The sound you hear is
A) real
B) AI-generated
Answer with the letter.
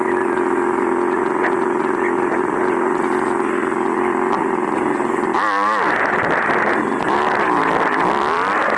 A